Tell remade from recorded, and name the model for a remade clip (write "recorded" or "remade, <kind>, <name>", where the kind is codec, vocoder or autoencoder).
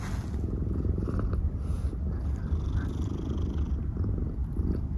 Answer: recorded